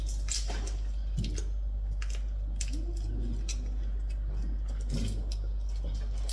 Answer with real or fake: real